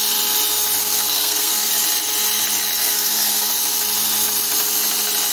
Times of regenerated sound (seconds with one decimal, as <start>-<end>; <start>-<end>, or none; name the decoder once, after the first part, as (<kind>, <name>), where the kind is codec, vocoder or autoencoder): 0.8-1.7 (codec, SNAC); 2.8-3.5